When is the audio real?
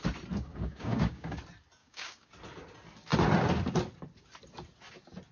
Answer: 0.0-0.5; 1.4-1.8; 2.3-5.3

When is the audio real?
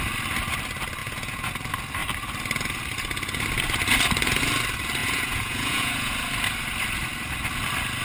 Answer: 0.0-1.0; 1.5-5.0; 6.1-8.0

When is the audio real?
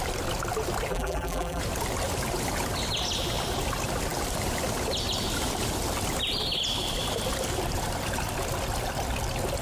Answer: 0.0-0.9; 1.6-9.6